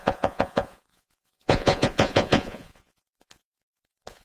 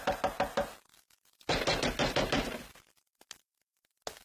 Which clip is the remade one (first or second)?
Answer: first